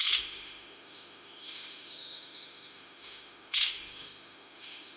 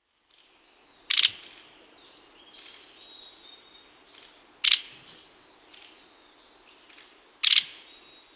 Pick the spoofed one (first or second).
first